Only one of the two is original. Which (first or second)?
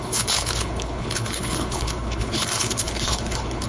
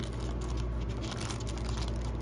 second